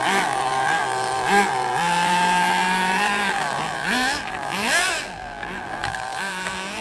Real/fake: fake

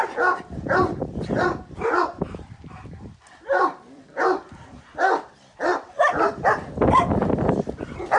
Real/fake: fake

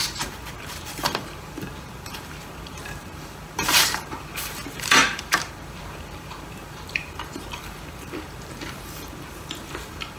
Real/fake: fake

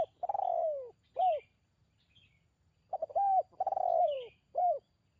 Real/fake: fake